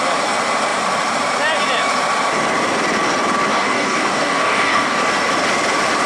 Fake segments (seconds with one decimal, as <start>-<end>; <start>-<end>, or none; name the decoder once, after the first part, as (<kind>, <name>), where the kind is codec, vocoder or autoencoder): 3.5-5.1 (codec, DAC)